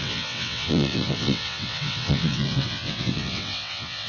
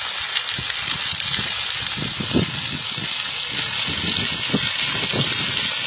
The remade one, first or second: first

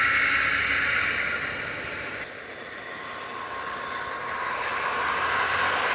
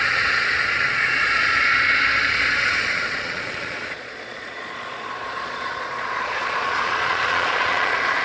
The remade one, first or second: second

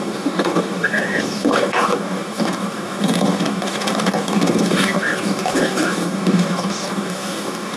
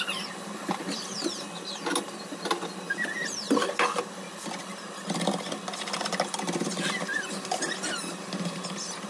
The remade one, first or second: first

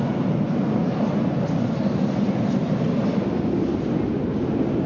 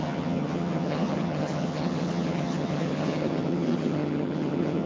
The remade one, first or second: second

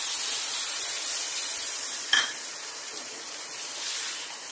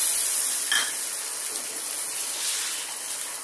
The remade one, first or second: first